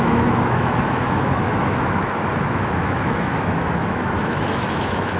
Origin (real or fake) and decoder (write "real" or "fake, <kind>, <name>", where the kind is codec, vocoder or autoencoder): fake, autoencoder, DAC-VAE